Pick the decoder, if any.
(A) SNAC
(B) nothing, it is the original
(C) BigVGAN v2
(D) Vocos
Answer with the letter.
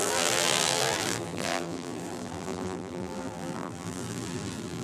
C